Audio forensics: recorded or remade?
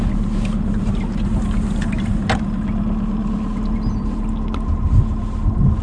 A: recorded